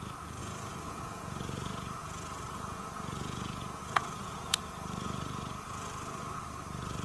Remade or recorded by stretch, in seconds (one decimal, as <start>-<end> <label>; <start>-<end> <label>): 0.0-0.4 recorded; 0.4-4.6 remade; 4.6-7.0 recorded